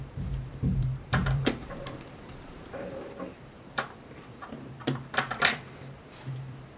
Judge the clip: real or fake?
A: fake